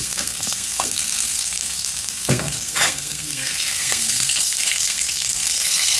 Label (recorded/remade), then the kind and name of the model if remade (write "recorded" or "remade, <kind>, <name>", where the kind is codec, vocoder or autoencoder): remade, codec, SNAC